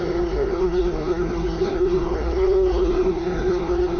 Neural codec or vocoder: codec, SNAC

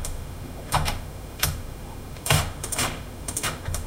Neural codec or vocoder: autoencoder, DAC-VAE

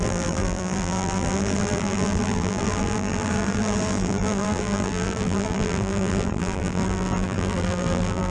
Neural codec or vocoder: vocoder, BigVGAN v2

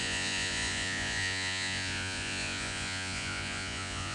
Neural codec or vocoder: vocoder, Vocos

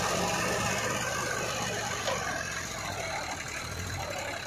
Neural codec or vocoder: none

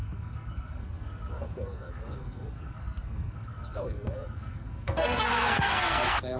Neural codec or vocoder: codec, SNAC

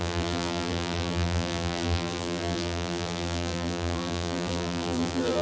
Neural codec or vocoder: vocoder, BigVGAN v2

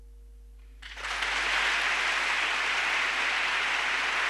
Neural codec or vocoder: none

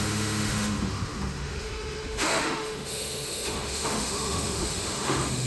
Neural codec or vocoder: autoencoder, DAC-VAE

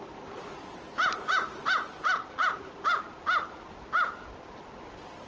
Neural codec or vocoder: none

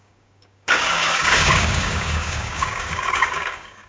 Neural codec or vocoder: codec, DAC